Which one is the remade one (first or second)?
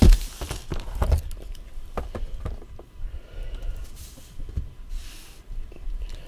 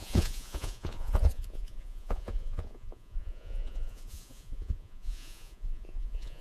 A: second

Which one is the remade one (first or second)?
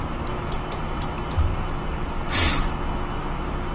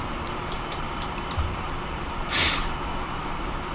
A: second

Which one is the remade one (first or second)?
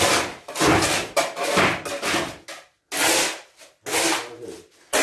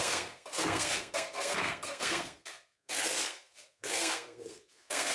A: second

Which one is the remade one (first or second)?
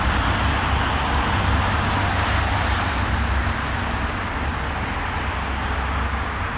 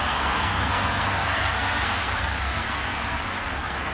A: second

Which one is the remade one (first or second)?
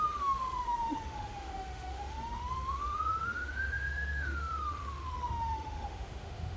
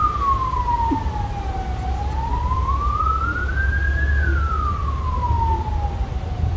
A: first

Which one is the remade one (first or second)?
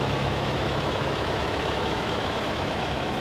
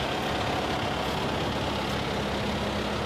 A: first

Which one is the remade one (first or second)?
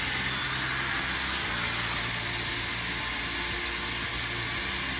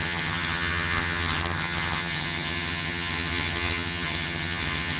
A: second